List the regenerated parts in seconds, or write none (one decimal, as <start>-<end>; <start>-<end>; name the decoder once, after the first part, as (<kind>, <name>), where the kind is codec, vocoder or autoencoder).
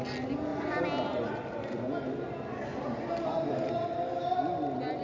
none